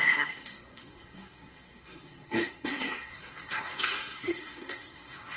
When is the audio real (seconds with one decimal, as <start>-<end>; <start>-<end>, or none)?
none